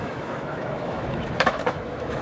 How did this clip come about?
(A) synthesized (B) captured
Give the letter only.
A